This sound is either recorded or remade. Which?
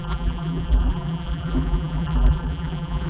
remade